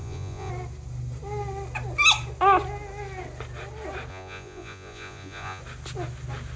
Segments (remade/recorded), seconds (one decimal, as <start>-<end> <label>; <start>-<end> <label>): 0.0-0.5 remade; 0.5-4.1 recorded; 4.1-5.6 remade; 5.6-6.6 recorded